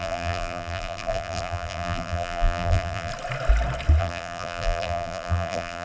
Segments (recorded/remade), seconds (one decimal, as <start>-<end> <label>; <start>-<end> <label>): 0.0-3.1 remade; 3.1-4.0 recorded; 4.0-5.8 remade

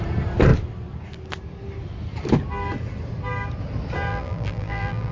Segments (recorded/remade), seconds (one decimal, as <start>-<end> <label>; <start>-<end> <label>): 0.0-4.1 recorded; 4.1-5.1 remade

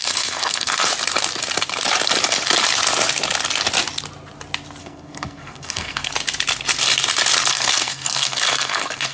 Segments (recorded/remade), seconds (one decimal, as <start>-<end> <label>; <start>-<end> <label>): 0.0-0.9 remade; 0.9-4.8 recorded; 4.8-6.1 remade; 6.1-7.5 recorded; 7.5-9.1 remade

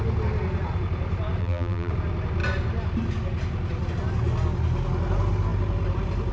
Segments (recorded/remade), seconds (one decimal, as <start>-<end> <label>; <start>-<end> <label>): 0.0-1.4 recorded; 1.4-1.9 remade; 1.9-6.3 recorded

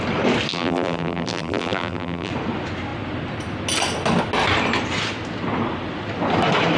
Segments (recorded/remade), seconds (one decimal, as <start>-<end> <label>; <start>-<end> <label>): 0.0-0.5 recorded; 0.5-2.3 remade; 2.3-6.8 recorded

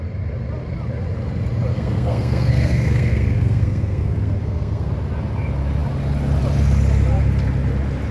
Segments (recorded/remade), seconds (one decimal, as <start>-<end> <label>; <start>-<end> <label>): 0.0-1.7 recorded; 1.7-4.9 remade; 4.9-8.1 recorded